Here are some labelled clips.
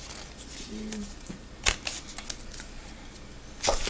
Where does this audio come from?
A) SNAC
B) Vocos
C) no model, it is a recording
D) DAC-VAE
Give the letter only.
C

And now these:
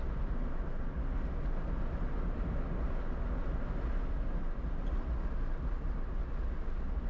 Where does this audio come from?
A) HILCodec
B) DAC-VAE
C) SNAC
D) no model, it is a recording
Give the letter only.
D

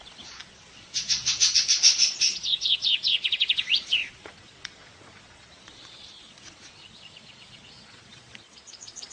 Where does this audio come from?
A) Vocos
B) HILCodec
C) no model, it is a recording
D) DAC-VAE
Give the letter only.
A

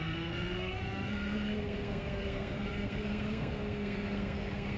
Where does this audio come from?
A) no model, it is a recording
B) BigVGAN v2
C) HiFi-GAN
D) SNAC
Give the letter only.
D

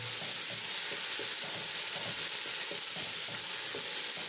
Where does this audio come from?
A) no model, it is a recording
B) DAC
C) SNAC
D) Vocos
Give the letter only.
A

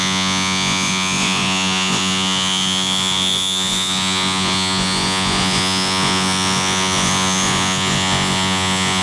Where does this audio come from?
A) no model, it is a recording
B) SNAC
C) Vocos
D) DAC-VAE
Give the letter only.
C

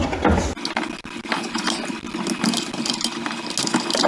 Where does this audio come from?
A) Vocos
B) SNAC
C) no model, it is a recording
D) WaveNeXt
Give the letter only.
C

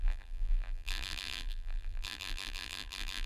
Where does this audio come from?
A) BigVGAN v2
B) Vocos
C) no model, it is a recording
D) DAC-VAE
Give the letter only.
A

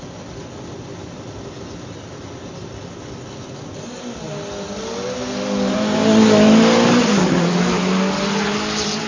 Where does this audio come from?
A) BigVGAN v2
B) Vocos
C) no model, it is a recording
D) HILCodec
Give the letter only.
C